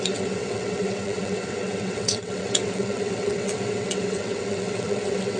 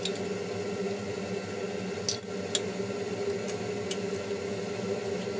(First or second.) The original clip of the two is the second